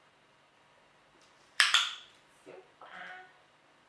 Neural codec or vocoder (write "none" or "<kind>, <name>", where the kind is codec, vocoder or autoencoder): vocoder, BigVGAN v2